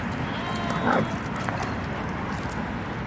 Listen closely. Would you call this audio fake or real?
real